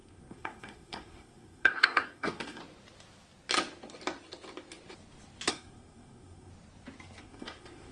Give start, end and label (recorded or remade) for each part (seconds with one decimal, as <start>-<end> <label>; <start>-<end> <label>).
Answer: 0.0-2.6 remade; 2.6-5.5 recorded; 5.5-6.5 remade; 6.5-7.2 recorded; 7.2-7.9 remade